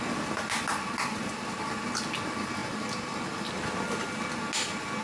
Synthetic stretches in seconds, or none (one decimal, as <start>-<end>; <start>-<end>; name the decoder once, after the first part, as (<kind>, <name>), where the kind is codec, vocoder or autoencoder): none